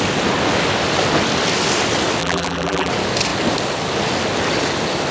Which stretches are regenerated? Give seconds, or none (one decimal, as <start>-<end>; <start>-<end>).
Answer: 2.2-2.9